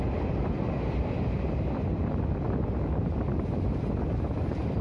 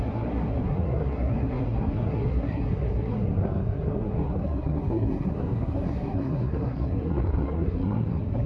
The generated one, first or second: second